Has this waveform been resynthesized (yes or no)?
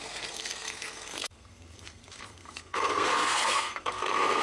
yes